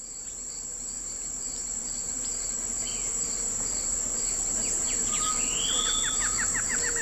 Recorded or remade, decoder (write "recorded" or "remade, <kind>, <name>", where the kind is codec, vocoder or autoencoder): remade, vocoder, BigVGAN v2